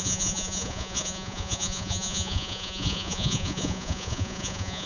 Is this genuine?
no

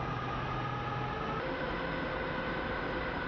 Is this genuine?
yes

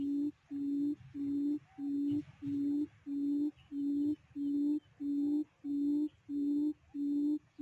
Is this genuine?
yes